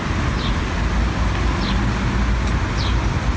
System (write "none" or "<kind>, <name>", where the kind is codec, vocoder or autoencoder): none